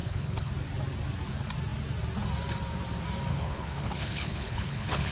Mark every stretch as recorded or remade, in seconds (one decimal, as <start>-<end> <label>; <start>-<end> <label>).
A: 0.0-0.5 remade; 0.5-3.3 recorded; 3.3-5.1 remade